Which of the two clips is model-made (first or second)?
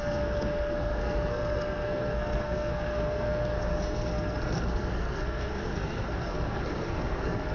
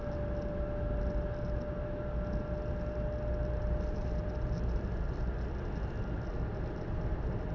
first